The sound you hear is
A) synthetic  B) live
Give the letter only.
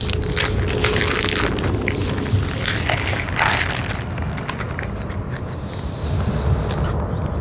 B